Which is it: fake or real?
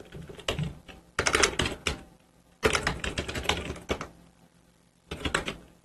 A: real